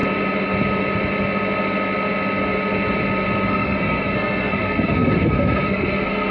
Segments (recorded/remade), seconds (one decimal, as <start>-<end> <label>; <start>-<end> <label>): 0.0-3.5 recorded; 3.5-6.3 remade